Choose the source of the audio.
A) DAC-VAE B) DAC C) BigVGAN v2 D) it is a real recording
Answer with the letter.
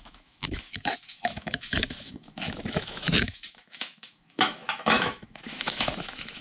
A